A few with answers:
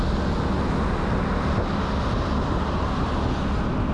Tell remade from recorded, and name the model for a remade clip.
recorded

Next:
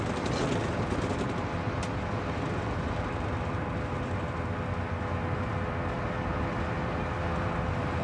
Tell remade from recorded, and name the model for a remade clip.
recorded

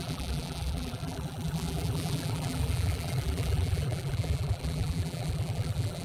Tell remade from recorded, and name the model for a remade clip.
remade, vocoder, BigVGAN v2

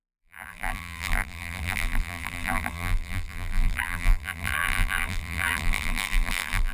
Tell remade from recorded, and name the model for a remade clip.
remade, vocoder, BigVGAN v2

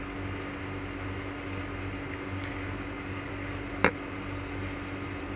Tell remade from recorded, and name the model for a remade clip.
recorded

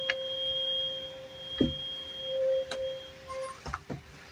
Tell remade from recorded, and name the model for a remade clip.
remade, vocoder, BigVGAN v2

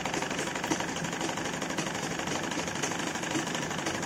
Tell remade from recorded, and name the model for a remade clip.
recorded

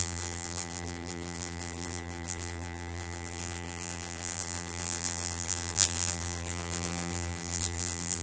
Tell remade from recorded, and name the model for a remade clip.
remade, vocoder, BigVGAN v2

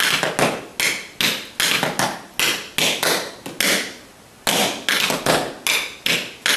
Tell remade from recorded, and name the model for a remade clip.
recorded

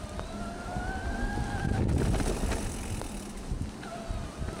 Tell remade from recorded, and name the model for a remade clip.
recorded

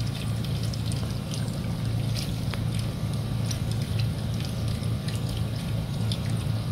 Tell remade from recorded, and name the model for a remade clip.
recorded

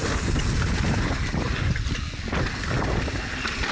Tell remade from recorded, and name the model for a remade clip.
recorded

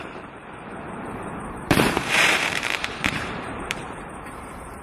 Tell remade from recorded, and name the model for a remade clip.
remade, vocoder, BigVGAN v2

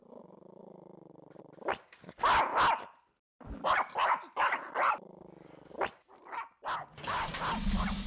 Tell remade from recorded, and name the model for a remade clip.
remade, vocoder, BigVGAN v2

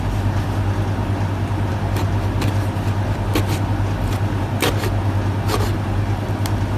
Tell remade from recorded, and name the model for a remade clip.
recorded